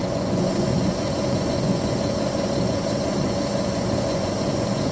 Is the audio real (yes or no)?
no